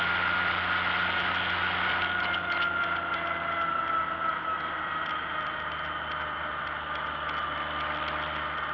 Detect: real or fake real